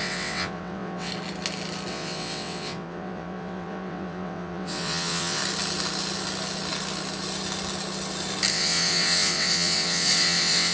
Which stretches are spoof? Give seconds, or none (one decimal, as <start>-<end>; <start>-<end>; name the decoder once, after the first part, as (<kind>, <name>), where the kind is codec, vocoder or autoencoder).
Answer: 0.0-1.1 (vocoder, WaveNeXt); 1.9-5.4; 8.5-10.7